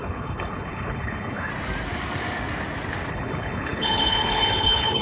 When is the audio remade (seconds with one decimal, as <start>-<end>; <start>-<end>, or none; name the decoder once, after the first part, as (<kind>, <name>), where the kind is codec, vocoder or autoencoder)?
0.0-1.5 (codec, HILCodec); 3.1-5.0